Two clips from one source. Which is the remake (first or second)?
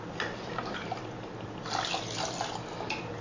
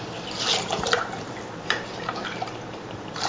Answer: second